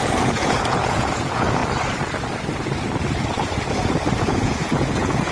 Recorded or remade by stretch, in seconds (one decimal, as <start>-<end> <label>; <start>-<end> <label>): 0.0-1.6 remade; 1.6-4.2 recorded; 4.2-5.3 remade